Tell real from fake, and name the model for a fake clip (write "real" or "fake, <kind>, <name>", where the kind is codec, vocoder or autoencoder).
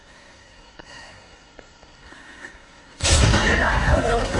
fake, codec, SNAC